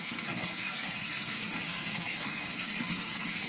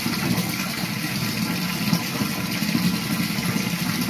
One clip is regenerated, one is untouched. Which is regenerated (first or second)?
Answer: first